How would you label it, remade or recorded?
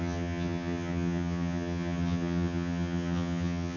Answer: remade